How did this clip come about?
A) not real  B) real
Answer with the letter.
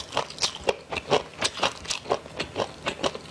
B